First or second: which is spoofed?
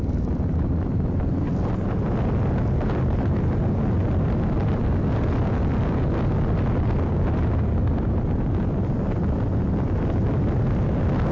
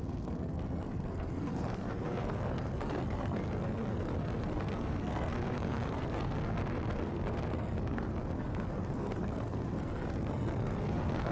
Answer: second